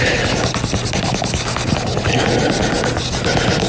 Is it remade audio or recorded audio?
recorded